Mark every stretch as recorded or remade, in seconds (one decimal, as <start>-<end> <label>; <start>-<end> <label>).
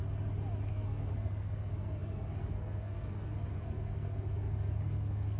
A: 0.0-0.7 recorded; 0.7-5.4 remade